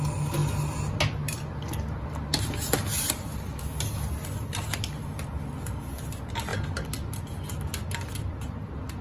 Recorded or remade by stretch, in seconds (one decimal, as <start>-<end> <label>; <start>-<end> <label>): 0.0-9.0 recorded